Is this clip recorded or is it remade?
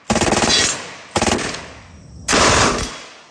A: recorded